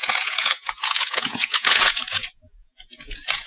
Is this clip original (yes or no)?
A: no